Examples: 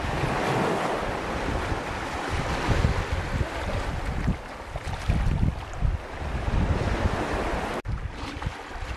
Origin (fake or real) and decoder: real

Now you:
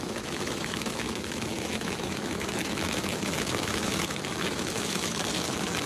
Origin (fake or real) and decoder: fake, autoencoder, DAC-VAE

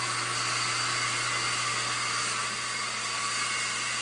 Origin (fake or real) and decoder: real